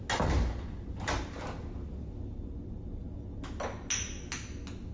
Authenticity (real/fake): real